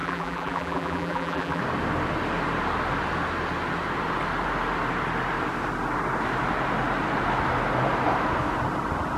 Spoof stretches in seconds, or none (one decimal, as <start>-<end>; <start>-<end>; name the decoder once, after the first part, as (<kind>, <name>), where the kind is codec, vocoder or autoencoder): 0.0-1.6 (vocoder, BigVGAN v2)